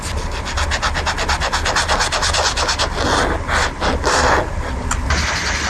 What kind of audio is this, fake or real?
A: real